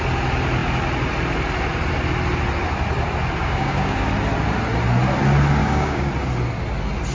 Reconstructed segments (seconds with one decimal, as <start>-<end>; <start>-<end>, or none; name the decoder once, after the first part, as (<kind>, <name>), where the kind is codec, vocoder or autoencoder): 3.4-4.1 (codec, DAC); 5.6-6.1